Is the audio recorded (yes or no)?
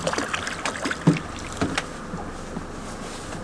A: yes